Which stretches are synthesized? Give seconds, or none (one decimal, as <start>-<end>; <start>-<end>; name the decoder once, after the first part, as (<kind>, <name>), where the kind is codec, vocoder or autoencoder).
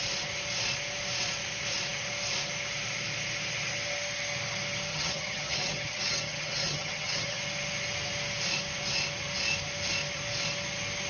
4.9-7.4 (vocoder, HiFi-GAN)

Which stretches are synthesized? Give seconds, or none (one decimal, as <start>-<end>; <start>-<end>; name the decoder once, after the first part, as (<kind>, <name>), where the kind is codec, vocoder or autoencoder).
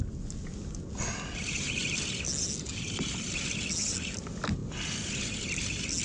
none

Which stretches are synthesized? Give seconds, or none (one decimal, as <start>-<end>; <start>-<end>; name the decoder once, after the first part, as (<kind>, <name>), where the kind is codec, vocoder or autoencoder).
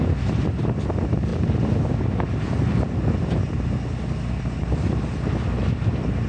none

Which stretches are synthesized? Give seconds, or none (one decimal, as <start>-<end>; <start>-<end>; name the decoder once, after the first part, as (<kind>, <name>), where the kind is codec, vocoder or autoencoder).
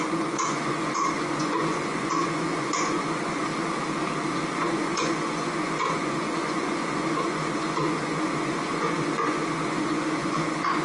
0.0-3.5 (vocoder, Vocos); 4.6-10.8